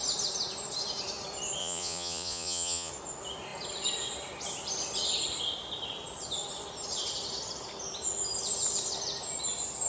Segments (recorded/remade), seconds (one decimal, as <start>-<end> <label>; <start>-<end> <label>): 0.0-1.6 recorded; 1.6-2.9 remade; 2.9-9.9 recorded